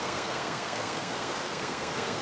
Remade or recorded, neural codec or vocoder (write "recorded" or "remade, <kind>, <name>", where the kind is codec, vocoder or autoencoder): remade, codec, SNAC